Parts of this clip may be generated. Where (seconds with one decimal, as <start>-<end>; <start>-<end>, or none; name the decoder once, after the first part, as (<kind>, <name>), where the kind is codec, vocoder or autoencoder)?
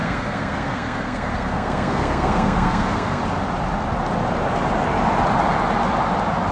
0.0-3.2 (codec, SNAC)